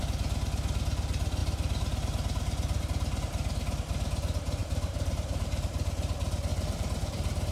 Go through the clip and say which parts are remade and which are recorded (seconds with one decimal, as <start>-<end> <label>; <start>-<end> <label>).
0.0-4.6 recorded; 4.6-5.7 remade; 5.7-6.5 recorded; 6.5-7.5 remade